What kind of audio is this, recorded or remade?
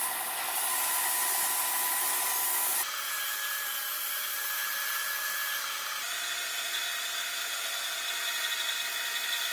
recorded